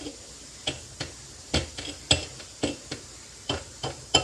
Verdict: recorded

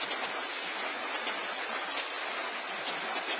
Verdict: recorded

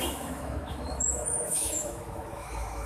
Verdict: remade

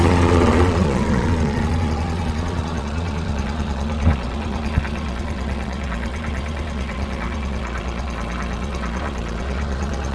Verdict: remade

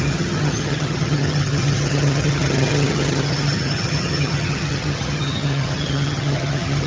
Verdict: remade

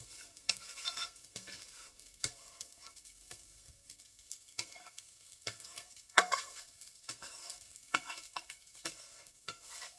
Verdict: remade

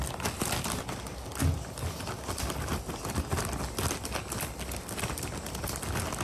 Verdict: recorded